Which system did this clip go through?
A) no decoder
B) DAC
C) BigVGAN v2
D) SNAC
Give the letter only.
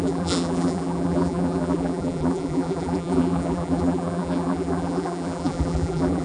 C